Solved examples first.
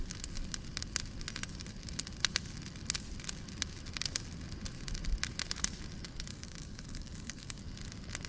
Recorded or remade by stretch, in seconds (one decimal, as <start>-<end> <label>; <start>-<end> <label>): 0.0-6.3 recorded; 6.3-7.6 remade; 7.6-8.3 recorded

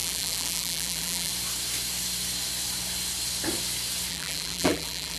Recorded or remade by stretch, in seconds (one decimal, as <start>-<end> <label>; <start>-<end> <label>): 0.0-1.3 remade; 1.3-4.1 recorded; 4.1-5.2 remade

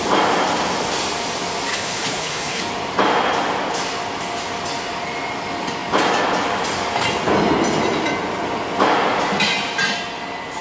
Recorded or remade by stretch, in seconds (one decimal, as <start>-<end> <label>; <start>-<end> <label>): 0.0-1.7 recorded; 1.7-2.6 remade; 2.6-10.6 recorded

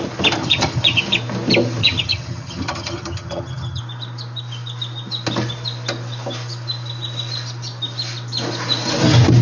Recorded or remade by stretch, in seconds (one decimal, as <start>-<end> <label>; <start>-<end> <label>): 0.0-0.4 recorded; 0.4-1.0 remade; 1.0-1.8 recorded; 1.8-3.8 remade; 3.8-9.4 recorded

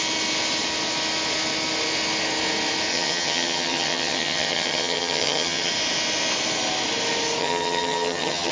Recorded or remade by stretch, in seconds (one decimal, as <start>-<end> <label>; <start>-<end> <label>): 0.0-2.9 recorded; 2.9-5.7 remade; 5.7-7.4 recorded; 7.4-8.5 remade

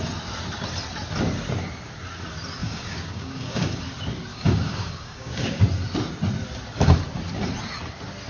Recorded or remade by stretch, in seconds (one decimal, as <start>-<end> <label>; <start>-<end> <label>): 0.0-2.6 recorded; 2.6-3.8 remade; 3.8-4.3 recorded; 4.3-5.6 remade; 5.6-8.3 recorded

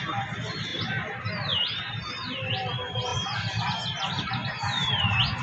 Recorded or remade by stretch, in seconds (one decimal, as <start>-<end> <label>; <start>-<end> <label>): 0.0-0.7 recorded; 0.7-1.8 remade; 1.8-3.1 recorded; 3.1-3.7 remade; 3.7-4.4 recorded; 4.4-5.0 remade; 5.0-5.4 recorded